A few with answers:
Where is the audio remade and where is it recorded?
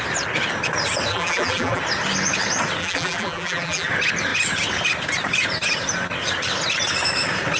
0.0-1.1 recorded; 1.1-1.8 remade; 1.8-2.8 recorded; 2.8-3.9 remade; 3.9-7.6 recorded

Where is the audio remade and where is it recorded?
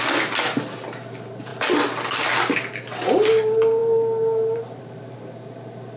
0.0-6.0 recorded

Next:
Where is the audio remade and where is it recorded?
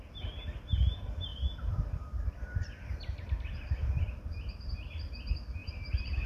0.0-1.3 recorded; 1.3-5.1 remade; 5.1-5.6 recorded; 5.6-6.3 remade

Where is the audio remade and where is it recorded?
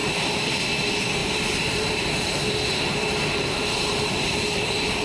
0.0-0.6 remade; 0.6-1.2 recorded; 1.2-2.5 remade; 2.5-2.9 recorded; 2.9-5.0 remade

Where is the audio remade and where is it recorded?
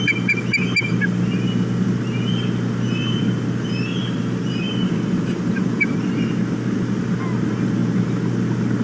0.0-4.0 recorded; 4.0-6.0 remade; 6.0-8.8 recorded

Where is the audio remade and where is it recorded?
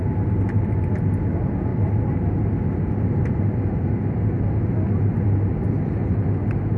0.0-6.8 recorded